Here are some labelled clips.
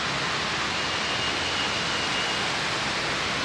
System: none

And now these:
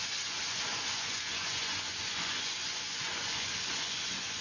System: vocoder, Vocos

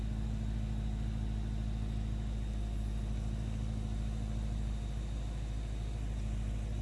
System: none